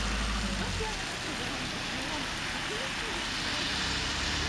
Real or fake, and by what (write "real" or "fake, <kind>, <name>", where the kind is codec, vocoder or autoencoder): real